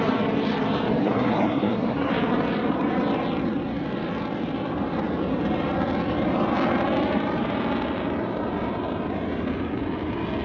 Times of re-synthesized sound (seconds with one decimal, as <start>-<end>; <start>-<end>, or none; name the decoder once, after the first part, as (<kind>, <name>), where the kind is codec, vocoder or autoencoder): 1.0-2.1 (codec, SNAC)